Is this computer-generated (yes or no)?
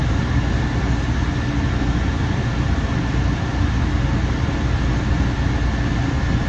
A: no